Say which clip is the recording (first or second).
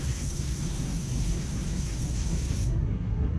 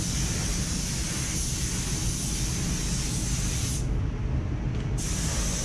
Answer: second